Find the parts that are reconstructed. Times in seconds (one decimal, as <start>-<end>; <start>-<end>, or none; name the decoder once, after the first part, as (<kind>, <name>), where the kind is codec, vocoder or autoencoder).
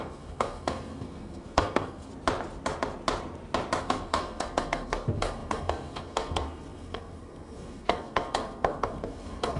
0.0-2.1 (codec, SNAC); 3.8-9.6